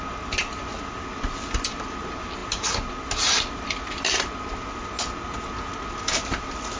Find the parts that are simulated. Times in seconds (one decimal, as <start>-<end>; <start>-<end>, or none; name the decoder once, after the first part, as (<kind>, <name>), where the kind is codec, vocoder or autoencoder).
0.7-2.0 (vocoder, BigVGAN v2); 2.4-3.0